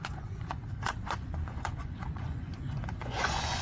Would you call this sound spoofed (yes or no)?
yes